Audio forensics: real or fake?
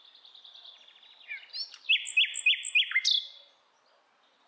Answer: real